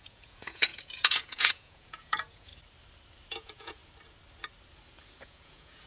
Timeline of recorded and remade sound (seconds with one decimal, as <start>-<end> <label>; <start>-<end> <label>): 0.0-2.5 remade; 2.5-3.3 recorded; 3.3-3.8 remade; 3.8-5.2 recorded; 5.2-5.9 remade